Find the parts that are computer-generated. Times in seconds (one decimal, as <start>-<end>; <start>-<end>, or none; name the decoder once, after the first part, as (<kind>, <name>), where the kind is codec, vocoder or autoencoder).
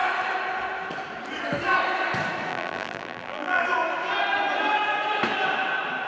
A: 2.5-3.6 (vocoder, BigVGAN v2)